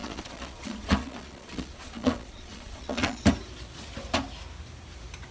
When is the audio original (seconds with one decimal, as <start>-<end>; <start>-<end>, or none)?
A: 3.2-5.3